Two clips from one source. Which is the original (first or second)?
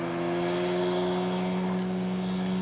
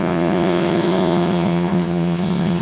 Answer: first